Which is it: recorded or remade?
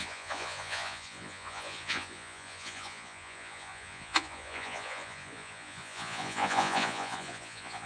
remade